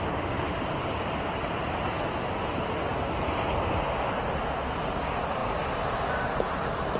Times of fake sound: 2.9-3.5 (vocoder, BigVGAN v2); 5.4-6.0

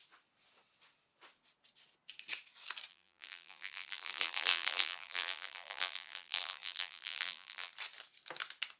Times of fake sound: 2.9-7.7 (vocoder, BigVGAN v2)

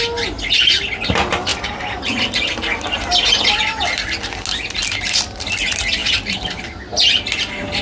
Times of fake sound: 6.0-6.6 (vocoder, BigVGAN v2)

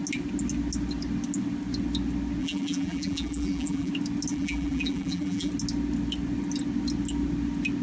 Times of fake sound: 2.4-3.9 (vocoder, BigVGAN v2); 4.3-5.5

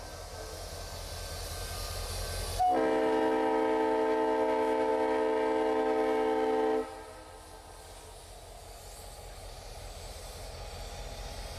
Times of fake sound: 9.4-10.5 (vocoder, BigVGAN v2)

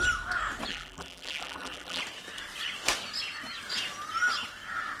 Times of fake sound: 0.7-2.0 (vocoder, BigVGAN v2)

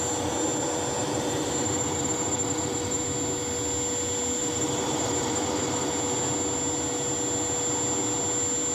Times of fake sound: 1.0-3.0 (vocoder, BigVGAN v2); 4.4-5.9